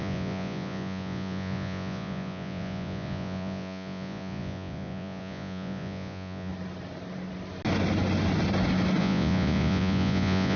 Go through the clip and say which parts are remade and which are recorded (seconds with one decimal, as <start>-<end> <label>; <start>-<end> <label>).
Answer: 0.0-6.5 remade; 6.5-9.0 recorded; 9.0-10.6 remade